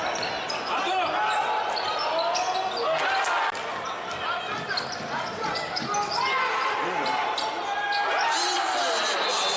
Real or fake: real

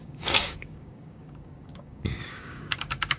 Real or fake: fake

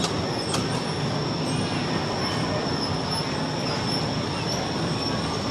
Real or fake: real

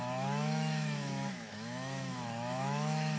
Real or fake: fake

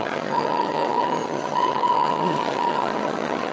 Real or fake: fake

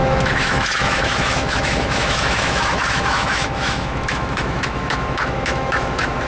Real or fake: fake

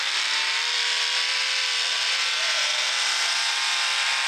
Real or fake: real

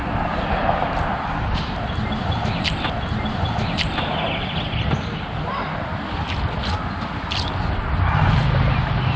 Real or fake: real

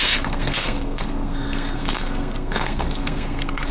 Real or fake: fake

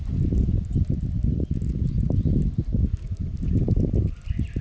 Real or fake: real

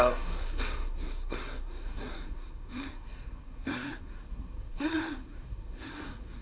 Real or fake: fake